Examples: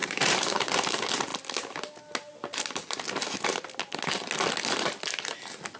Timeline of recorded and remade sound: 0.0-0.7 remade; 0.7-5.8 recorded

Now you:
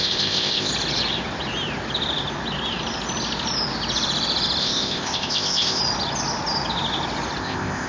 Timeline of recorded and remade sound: 0.0-0.7 remade; 0.7-4.6 recorded; 4.6-5.8 remade; 5.8-7.4 recorded; 7.4-7.9 remade

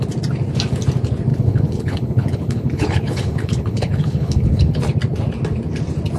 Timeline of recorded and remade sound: 0.0-1.3 recorded; 1.3-4.8 remade; 4.8-6.2 recorded

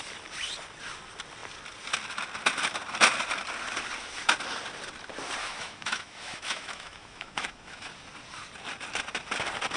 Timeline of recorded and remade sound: 0.0-5.4 recorded; 5.4-7.9 remade; 7.9-9.8 recorded

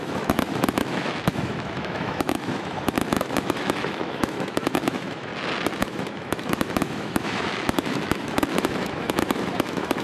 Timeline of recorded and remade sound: 0.0-5.3 remade; 5.3-5.8 recorded; 5.8-10.0 remade

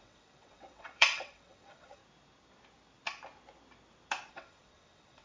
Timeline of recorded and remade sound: 0.0-2.0 remade; 2.0-4.3 recorded; 4.3-5.2 remade

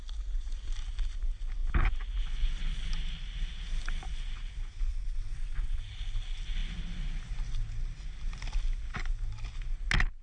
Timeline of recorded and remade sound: 0.0-4.9 recorded; 4.9-5.8 remade; 5.8-10.2 recorded